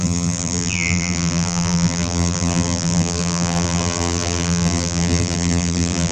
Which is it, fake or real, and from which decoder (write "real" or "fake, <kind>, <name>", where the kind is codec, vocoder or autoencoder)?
fake, vocoder, BigVGAN v2